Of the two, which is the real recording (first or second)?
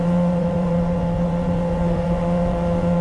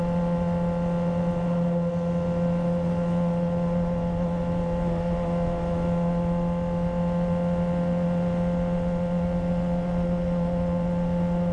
second